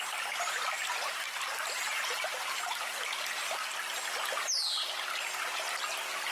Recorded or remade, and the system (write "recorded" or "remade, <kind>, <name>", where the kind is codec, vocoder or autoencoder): recorded